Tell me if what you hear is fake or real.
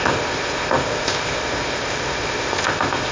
fake